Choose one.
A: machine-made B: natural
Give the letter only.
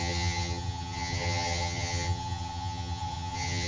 A